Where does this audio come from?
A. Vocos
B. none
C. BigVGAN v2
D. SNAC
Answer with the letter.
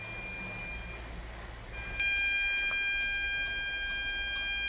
B